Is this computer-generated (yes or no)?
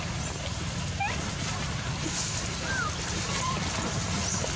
no